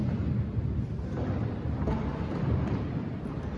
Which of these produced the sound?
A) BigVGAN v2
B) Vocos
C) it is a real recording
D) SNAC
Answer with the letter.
A